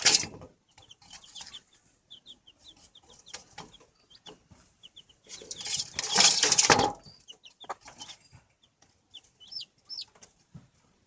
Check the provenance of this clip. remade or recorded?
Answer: recorded